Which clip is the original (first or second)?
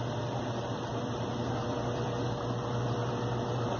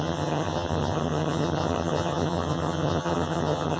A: first